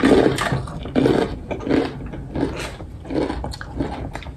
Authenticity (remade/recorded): recorded